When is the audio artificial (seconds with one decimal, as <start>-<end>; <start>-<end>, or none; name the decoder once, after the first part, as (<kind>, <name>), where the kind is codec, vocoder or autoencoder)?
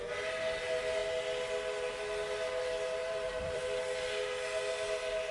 3.0-3.6 (vocoder, BigVGAN v2)